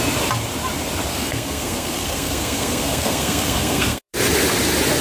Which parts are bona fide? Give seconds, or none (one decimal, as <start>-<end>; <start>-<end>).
0.0-1.1; 4.1-5.0